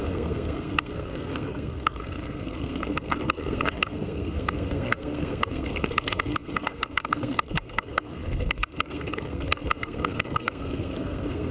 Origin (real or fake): fake